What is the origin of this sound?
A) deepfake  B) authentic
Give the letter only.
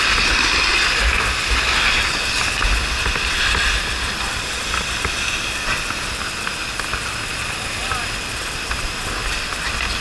B